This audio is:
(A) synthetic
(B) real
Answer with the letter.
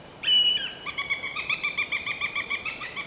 A